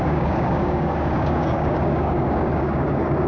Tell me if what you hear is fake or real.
fake